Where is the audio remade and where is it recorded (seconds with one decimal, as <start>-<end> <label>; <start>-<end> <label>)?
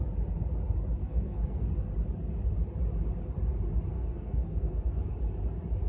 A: 0.0-1.0 recorded; 1.0-1.7 remade; 1.7-3.9 recorded; 3.9-5.1 remade; 5.1-5.9 recorded